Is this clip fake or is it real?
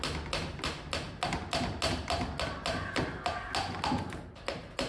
real